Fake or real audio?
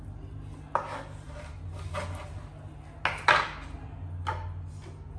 real